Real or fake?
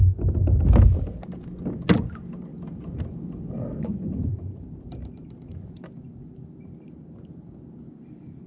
real